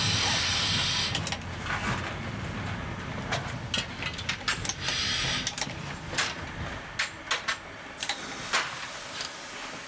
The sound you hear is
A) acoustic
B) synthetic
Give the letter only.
A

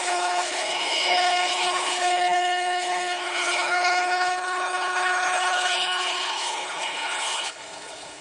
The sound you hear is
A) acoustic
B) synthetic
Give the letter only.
B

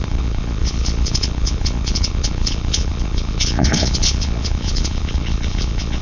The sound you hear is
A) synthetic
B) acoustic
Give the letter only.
A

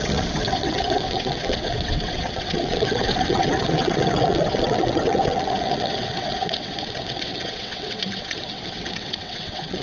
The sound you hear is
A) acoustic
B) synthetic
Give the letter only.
B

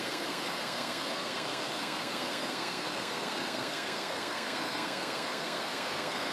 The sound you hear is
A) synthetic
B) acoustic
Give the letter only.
A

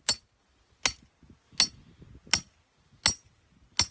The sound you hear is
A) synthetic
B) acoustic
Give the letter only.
B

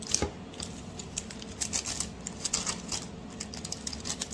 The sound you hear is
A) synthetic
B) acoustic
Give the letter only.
B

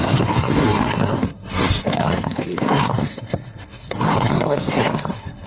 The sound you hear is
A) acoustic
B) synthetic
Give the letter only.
B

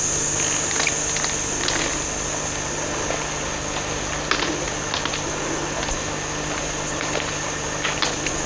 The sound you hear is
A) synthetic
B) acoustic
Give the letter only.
B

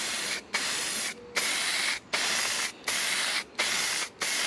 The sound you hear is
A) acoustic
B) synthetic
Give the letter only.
A